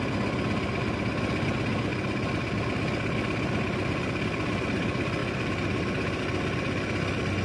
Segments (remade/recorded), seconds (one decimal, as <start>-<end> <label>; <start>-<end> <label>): 0.0-5.2 recorded; 5.2-6.2 remade; 6.2-7.4 recorded